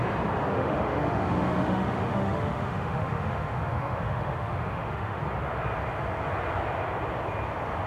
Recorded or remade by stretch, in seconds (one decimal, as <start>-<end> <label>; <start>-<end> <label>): 0.0-0.5 recorded; 0.5-5.2 remade; 5.2-7.9 recorded